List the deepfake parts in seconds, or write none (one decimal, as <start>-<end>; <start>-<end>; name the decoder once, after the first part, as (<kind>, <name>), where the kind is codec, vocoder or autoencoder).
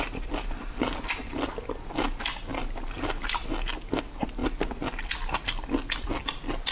none